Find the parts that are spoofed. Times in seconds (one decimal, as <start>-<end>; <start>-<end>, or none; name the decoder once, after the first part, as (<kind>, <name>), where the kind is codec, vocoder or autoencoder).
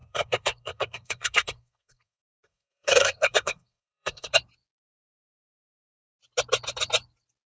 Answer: 0.0-4.3 (codec, SNAC)